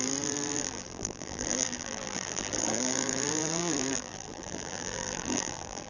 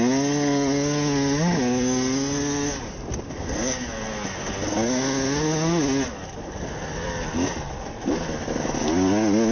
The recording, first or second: second